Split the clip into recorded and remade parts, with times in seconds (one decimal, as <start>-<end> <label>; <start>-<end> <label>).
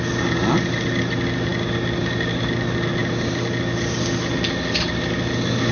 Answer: 0.0-5.7 recorded